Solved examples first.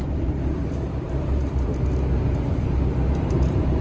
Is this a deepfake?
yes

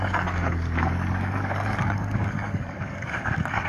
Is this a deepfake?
yes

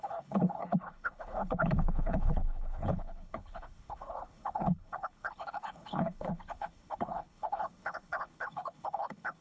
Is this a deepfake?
yes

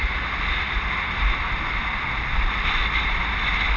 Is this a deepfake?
no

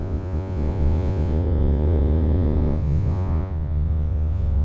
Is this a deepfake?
yes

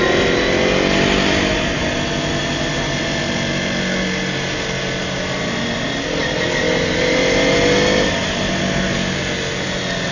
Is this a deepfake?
no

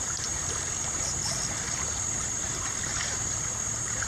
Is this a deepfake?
yes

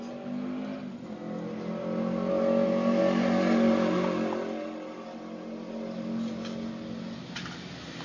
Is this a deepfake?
no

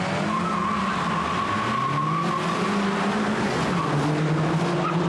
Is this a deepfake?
no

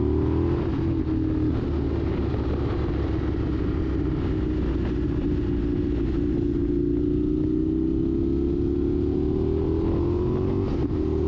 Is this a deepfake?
no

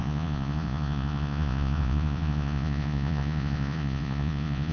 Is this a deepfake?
yes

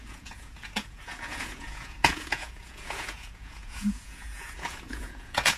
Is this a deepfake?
yes